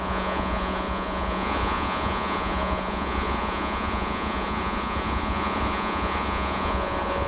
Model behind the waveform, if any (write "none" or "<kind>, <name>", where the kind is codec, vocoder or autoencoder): vocoder, Vocos